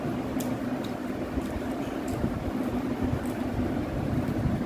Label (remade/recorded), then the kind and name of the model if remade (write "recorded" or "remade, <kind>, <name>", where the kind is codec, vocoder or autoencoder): recorded